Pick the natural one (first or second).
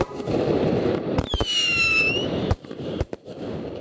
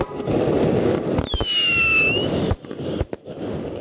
second